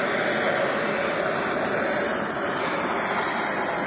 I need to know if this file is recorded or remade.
recorded